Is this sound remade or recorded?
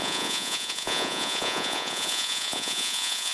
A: remade